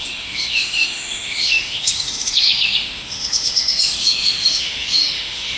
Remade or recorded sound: remade